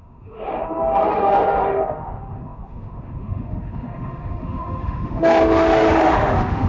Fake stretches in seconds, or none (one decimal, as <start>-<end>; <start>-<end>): 0.0-6.7